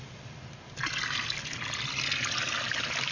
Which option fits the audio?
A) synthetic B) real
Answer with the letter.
B